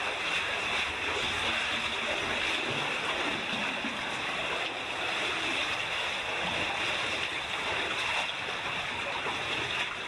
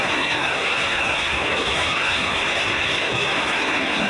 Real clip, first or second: first